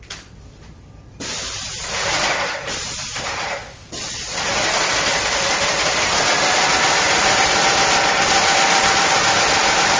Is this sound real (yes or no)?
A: no